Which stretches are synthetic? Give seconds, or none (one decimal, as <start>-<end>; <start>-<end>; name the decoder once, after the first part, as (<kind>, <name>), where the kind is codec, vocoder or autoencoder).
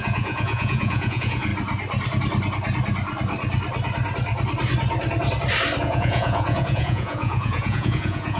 0.0-1.5 (vocoder, Vocos); 5.8-8.4